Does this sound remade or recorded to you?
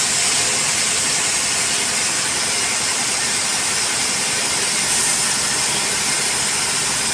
recorded